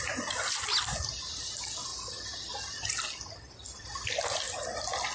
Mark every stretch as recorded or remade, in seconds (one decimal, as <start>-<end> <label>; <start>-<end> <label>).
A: 0.0-5.1 recorded